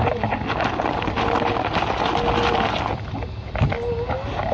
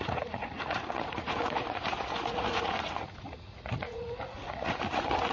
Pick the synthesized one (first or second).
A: second